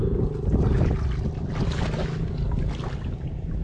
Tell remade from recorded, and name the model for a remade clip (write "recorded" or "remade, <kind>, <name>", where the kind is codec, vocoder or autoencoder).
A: recorded